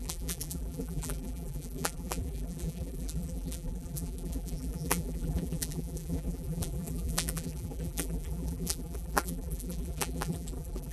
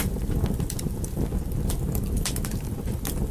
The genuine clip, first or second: second